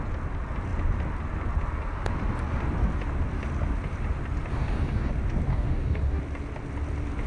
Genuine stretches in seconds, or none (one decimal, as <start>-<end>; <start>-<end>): 0.0-4.5; 5.1-5.5; 6.2-7.3

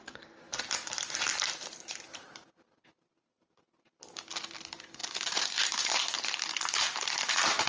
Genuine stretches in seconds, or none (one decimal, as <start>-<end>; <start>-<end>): 0.0-0.5; 4.2-5.0

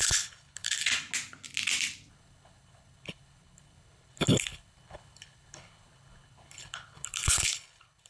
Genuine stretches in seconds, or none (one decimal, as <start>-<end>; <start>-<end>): 0.9-2.1

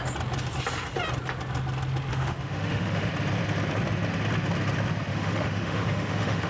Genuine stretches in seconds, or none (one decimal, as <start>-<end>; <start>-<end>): 0.0-2.1; 3.1-5.1

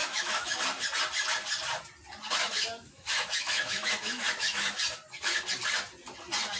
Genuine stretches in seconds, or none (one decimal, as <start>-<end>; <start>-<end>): 0.6-2.4; 4.8-6.6